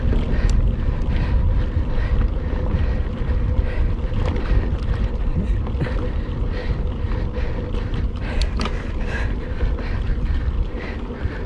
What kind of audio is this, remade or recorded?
recorded